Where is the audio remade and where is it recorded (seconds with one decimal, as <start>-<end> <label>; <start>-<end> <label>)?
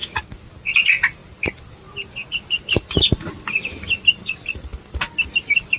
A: 0.0-5.8 recorded